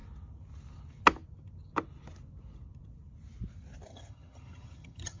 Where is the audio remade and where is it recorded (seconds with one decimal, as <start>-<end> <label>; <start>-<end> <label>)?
0.0-3.9 recorded; 3.9-5.2 remade